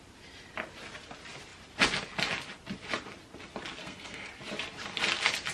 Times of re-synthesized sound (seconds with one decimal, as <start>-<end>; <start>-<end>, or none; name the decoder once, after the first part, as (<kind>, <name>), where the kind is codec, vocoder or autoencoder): 3.8-4.3 (codec, SNAC)